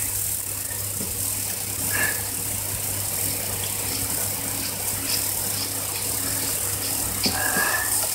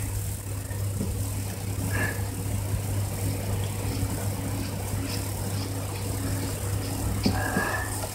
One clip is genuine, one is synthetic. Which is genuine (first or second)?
second